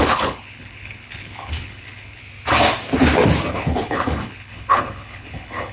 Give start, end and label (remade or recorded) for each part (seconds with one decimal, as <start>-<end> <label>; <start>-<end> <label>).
0.0-2.2 remade; 2.2-3.5 recorded; 3.5-5.7 remade